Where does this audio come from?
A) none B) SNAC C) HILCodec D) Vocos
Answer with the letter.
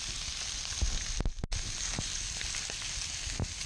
A